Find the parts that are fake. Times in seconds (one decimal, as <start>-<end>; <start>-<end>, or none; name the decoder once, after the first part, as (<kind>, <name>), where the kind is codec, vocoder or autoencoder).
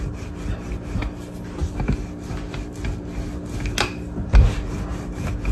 none